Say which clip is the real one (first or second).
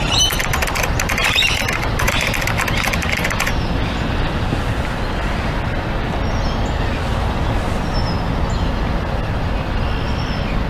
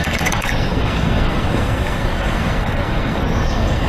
first